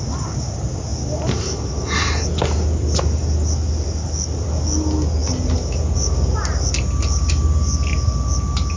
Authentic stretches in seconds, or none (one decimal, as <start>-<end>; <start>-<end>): 0.0-8.8